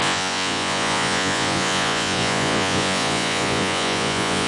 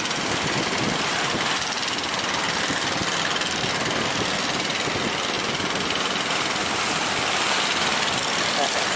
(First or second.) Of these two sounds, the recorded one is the second